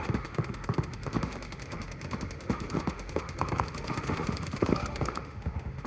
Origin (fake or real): fake